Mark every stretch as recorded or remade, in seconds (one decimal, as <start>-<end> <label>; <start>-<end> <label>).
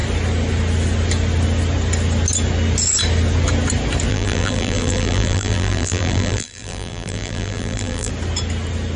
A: 0.0-4.1 recorded; 4.1-8.1 remade; 8.1-9.0 recorded